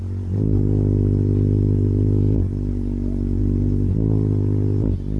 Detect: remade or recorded recorded